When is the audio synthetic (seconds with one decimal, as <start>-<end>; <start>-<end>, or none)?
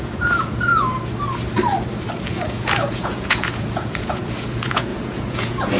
0.0-0.7; 2.3-5.8